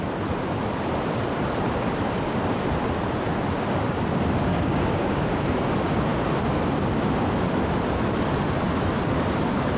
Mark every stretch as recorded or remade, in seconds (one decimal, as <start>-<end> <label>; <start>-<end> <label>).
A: 0.0-4.5 recorded; 4.5-5.4 remade; 5.4-9.8 recorded